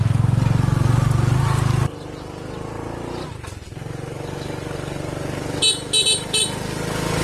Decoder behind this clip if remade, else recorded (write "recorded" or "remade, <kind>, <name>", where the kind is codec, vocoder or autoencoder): recorded